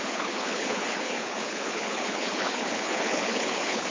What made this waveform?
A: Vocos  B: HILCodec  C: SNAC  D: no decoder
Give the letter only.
B